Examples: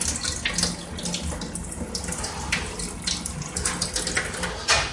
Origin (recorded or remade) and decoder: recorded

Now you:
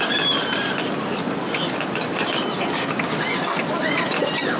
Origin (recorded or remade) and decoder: recorded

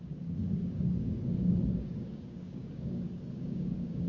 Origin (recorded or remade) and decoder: remade, codec, DAC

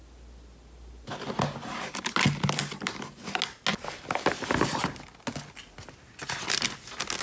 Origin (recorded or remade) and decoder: recorded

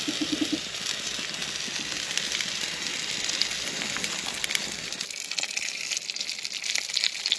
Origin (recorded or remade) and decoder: recorded